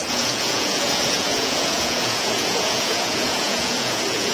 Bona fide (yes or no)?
no